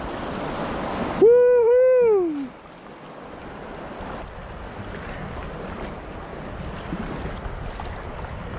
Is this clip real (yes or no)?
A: yes